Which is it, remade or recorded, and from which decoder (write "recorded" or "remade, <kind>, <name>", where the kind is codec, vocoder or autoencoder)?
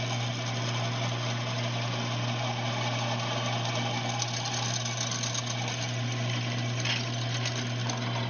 recorded